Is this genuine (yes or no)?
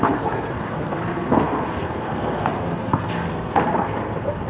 no